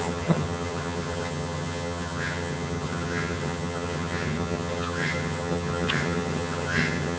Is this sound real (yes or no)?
no